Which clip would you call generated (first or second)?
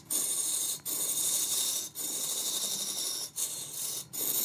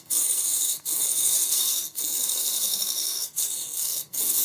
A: second